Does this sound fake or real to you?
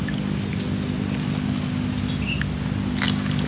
real